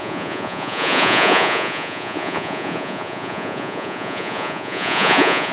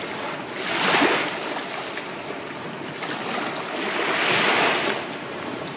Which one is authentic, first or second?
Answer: second